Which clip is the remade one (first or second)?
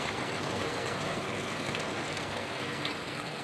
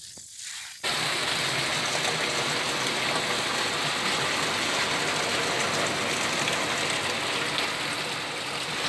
first